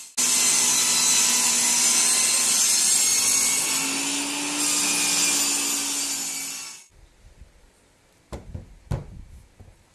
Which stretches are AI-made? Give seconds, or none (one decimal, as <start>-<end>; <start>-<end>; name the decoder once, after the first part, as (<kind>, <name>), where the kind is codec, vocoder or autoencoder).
none